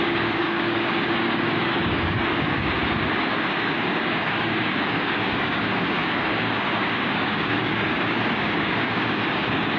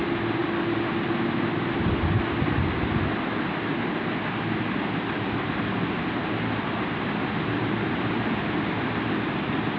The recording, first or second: second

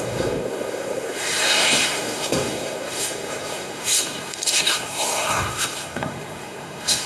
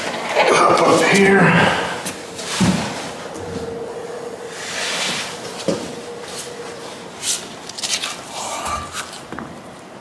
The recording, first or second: second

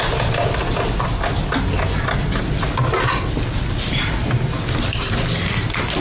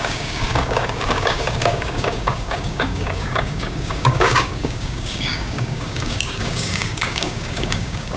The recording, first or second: first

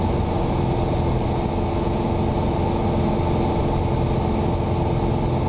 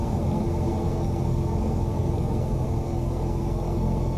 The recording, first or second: first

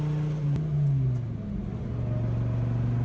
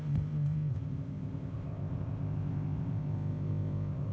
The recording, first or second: first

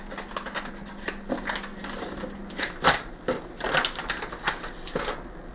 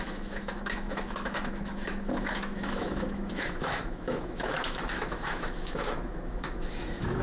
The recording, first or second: first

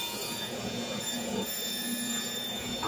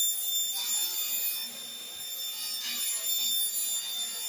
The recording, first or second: second